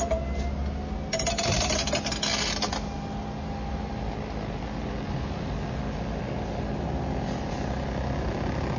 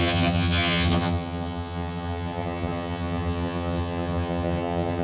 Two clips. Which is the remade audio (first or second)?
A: second